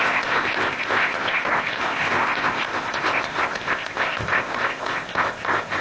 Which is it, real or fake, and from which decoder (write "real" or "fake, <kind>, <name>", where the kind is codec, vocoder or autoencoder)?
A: fake, codec, ZipCodec